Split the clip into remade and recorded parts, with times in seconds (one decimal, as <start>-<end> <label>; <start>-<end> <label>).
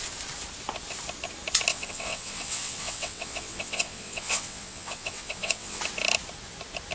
0.0-1.7 recorded; 1.7-5.8 remade; 5.8-6.9 recorded